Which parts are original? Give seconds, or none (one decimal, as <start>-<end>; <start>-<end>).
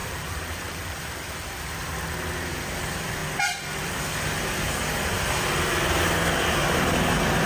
1.6-7.5